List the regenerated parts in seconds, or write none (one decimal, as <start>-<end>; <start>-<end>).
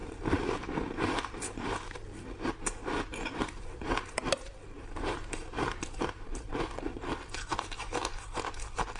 0.0-2.5; 3.1-7.3